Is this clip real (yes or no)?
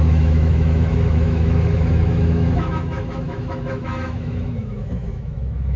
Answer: no